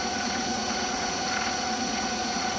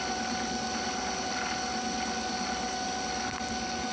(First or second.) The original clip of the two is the second